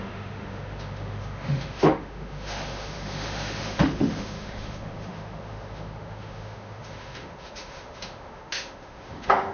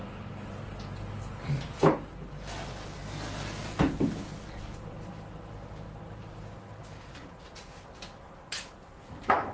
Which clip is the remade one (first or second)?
first